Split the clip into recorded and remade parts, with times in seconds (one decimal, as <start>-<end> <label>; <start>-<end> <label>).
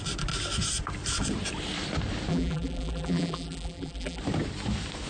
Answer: 0.0-2.3 recorded; 2.3-4.2 remade; 4.2-5.1 recorded